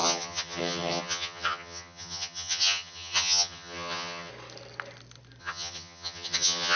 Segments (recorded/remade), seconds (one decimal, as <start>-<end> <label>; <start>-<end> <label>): 0.0-4.3 remade; 4.3-5.4 recorded; 5.4-6.8 remade